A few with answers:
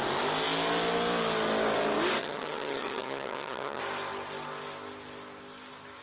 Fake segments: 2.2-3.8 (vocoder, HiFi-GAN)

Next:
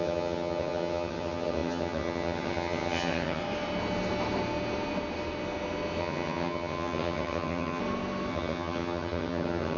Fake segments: 0.0-3.4 (vocoder, HiFi-GAN); 6.0-7.8; 8.3-9.8

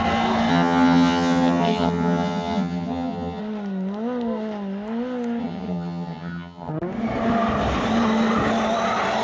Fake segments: 0.5-3.4 (vocoder, HiFi-GAN); 5.4-6.7

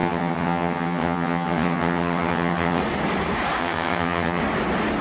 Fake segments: 0.0-2.8 (vocoder, HiFi-GAN); 3.6-4.4

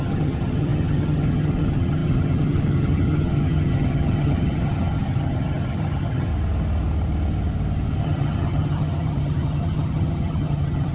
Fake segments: 0.0-6.3 (vocoder, HiFi-GAN); 8.0-10.9

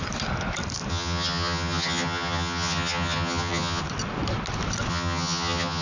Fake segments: 0.9-3.8 (vocoder, HiFi-GAN); 4.9-5.8